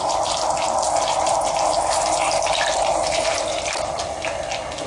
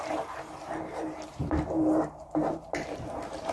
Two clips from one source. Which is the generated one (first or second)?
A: second